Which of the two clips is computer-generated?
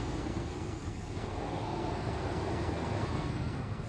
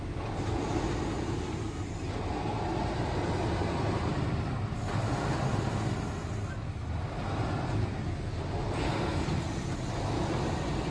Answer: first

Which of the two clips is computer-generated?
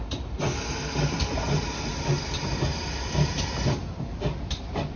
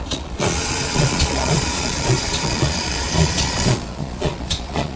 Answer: second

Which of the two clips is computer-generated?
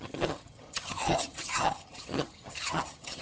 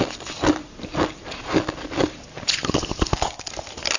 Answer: first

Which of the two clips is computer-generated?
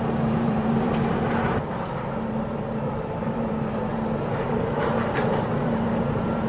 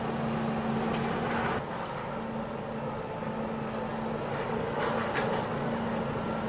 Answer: first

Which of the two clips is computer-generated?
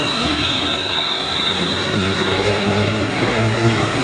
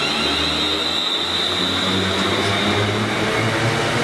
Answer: first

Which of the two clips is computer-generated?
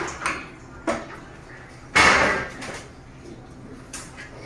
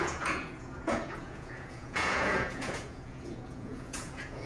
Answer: second